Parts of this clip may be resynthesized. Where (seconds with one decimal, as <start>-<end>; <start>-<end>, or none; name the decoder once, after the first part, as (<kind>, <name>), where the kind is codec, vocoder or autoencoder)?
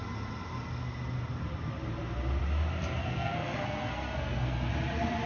3.0-4.7 (codec, SNAC)